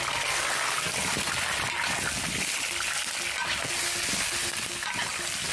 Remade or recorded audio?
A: recorded